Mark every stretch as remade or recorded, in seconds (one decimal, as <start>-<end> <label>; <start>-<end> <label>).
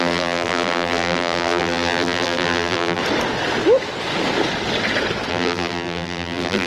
0.0-3.0 remade; 3.0-5.3 recorded; 5.3-6.7 remade